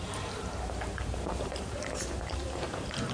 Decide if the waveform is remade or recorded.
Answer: remade